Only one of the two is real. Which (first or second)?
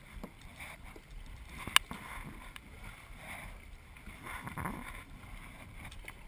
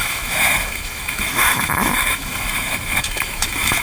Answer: first